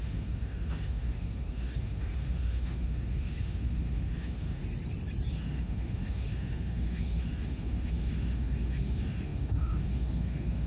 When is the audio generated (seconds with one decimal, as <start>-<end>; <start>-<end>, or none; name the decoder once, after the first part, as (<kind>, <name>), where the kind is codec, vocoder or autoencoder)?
0.0-4.6 (autoencoder, DAC-VAE); 5.3-10.7